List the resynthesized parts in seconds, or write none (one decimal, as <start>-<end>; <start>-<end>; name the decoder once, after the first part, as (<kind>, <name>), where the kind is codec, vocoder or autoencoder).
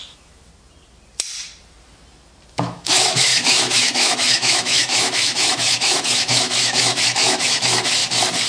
0.0-0.5 (autoencoder, DAC-VAE); 2.5-8.0